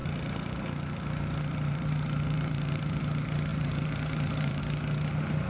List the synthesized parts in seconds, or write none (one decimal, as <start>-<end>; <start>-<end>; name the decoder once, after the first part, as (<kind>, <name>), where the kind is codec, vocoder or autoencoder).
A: 0.0-3.0 (vocoder, BigVGAN v2); 3.5-4.6